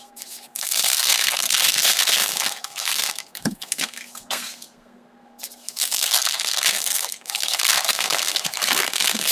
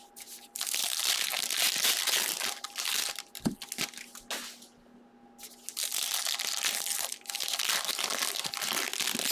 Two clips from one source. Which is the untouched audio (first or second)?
second